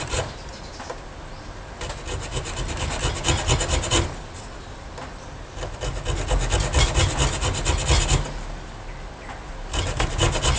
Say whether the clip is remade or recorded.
recorded